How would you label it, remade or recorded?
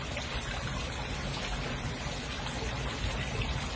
recorded